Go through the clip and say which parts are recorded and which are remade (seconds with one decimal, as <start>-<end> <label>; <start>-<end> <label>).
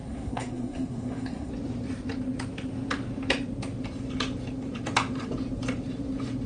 0.0-1.5 remade; 1.5-6.5 recorded